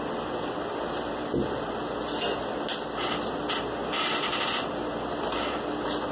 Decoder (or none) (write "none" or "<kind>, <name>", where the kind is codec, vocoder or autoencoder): none